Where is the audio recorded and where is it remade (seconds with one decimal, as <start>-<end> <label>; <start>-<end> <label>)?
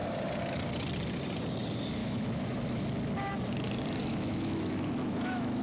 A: 0.0-2.0 recorded; 2.0-2.8 remade; 2.8-4.0 recorded; 4.0-5.6 remade